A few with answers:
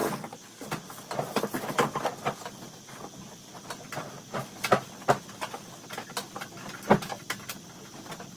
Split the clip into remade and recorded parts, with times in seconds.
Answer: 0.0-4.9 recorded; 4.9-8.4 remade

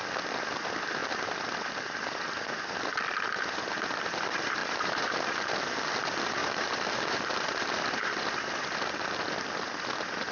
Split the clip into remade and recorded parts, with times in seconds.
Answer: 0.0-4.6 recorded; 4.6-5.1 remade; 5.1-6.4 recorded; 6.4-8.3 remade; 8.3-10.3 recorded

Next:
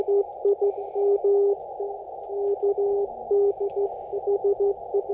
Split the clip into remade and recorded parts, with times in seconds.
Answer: 0.0-5.1 recorded